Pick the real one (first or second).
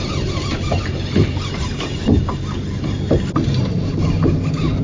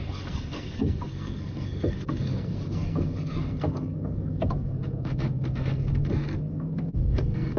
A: first